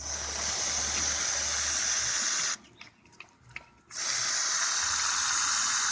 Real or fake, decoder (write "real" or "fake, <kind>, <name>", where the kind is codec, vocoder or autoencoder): real